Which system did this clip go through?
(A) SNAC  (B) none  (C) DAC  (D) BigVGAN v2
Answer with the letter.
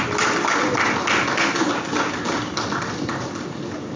B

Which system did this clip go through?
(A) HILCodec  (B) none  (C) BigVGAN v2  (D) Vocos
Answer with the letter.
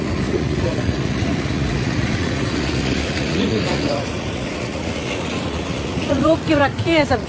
D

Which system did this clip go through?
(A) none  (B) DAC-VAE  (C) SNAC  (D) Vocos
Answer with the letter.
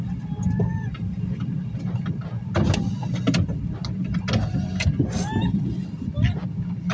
A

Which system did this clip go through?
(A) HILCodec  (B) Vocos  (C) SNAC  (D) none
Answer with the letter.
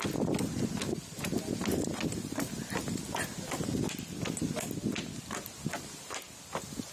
D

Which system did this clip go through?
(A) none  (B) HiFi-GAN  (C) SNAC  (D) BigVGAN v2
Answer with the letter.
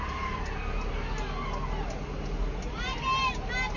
A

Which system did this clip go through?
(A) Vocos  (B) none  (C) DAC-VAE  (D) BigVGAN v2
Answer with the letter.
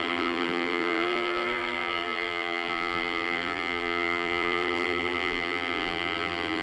D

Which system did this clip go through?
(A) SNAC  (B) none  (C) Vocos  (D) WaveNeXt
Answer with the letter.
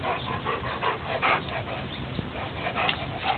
B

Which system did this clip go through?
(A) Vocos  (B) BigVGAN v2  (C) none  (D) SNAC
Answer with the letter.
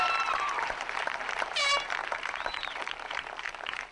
B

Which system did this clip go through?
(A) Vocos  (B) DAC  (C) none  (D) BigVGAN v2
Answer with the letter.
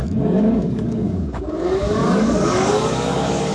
B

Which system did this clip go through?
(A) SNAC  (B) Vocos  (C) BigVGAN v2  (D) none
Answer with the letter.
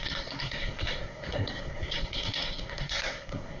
A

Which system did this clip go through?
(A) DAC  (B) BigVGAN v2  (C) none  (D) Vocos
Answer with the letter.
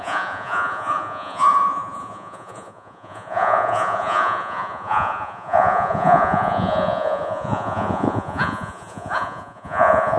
D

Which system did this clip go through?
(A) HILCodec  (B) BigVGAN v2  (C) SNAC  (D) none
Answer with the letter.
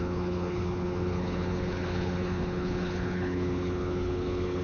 A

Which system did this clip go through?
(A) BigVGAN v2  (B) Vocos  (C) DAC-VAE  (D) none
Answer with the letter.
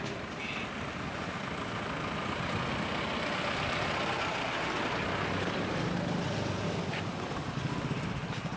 D